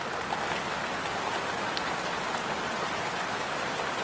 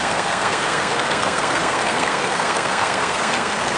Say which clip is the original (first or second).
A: first